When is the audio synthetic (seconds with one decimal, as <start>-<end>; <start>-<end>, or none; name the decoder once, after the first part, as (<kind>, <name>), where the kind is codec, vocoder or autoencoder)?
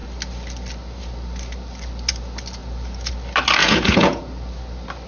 3.6-4.2 (vocoder, Vocos)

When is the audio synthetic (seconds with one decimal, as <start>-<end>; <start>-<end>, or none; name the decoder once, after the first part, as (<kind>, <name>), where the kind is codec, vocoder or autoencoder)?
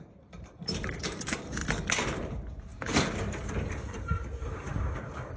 0.0-1.6 (vocoder, BigVGAN v2); 2.2-5.4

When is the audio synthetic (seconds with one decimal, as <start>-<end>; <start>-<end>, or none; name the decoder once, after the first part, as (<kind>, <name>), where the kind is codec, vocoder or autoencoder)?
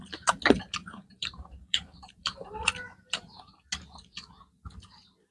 0.8-3.5 (vocoder, BigVGAN v2)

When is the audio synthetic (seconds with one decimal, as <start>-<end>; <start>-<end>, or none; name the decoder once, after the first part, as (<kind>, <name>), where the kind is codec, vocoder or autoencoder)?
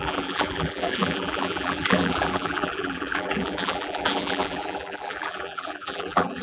0.0-6.4 (vocoder, BigVGAN v2)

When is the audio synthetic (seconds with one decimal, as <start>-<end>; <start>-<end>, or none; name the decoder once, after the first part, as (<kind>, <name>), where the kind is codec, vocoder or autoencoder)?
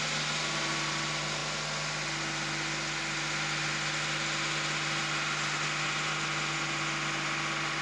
none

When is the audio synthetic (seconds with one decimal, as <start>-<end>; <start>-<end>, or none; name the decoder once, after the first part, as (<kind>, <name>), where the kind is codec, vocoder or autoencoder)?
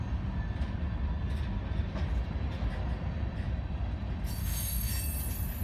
4.4-4.9 (codec, DAC)